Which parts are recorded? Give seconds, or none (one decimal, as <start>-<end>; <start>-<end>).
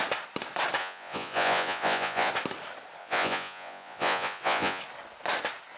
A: 0.0-0.8; 2.3-3.0; 4.8-5.8